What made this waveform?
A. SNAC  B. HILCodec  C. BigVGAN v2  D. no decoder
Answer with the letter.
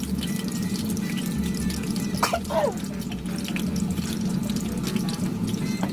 D